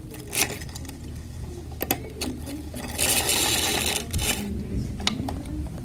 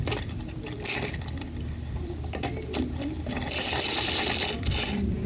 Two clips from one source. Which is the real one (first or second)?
first